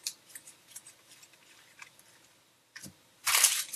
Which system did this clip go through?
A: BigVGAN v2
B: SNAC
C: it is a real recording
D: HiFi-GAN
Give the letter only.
A